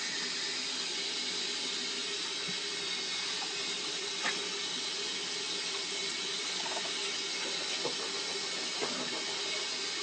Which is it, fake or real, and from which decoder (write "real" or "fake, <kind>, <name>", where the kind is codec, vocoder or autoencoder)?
real